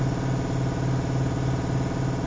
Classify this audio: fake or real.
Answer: real